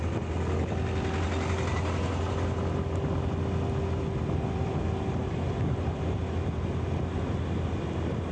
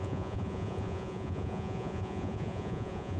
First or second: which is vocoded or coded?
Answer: second